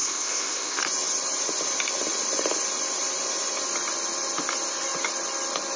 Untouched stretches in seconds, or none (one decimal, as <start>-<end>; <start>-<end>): 0.8-5.8